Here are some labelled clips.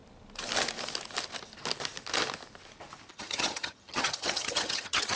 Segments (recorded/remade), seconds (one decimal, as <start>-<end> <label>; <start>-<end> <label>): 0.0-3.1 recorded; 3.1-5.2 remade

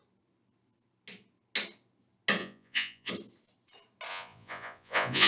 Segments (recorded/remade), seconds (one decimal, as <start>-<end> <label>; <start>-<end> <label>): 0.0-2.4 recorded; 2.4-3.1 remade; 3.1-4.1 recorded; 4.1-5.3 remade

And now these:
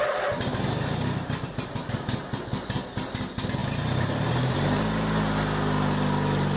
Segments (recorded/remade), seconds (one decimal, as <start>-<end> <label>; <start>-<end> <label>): 0.0-0.5 recorded; 0.5-2.4 remade; 2.4-3.6 recorded; 3.6-4.8 remade; 4.8-6.6 recorded

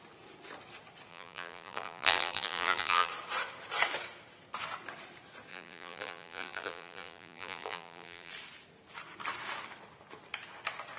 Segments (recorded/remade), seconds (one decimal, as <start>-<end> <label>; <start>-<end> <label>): 0.0-1.1 recorded; 1.1-3.1 remade; 3.1-5.5 recorded; 5.5-8.3 remade; 8.3-11.0 recorded

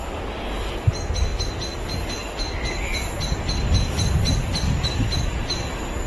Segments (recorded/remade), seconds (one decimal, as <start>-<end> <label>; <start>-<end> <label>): 0.0-6.1 recorded

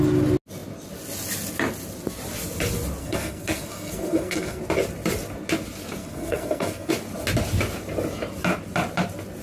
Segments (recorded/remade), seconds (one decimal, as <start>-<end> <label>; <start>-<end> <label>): 0.0-3.0 recorded; 3.0-4.6 remade; 4.6-6.0 recorded; 6.0-6.9 remade; 6.9-9.4 recorded

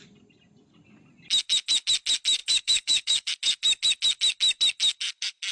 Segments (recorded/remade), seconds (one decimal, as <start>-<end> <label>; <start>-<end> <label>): 0.0-2.4 recorded; 2.4-3.3 remade; 3.3-5.5 recorded

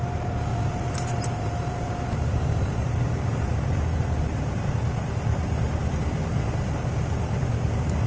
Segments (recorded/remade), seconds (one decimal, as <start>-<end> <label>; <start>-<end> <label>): 0.0-0.5 recorded; 0.5-4.7 remade; 4.7-8.1 recorded